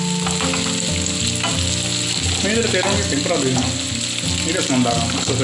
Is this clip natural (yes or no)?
yes